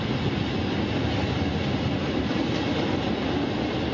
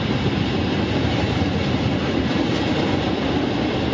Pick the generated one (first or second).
second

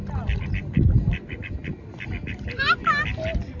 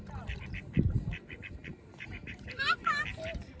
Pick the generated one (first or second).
second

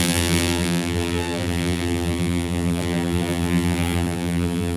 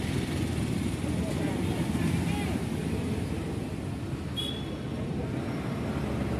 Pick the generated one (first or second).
first